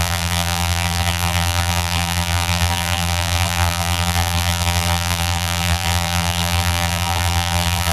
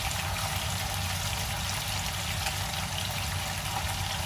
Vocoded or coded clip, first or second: first